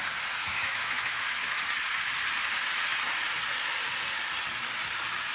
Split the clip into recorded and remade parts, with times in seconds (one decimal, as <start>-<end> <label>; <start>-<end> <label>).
0.0-0.4 recorded; 0.4-1.6 remade; 1.6-5.3 recorded